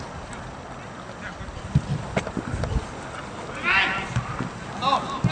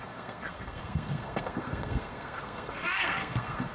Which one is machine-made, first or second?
second